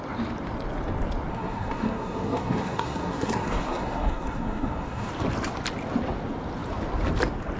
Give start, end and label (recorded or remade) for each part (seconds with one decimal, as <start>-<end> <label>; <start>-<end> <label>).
0.0-1.3 recorded; 1.3-5.1 remade; 5.1-7.6 recorded